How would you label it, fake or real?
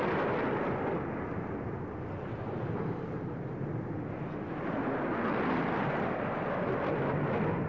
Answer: real